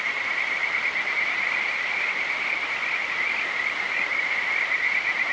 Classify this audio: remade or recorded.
recorded